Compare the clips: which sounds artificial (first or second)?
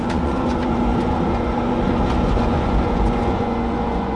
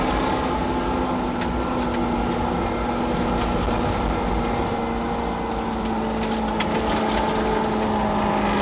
first